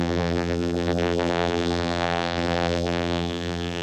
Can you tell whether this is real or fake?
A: fake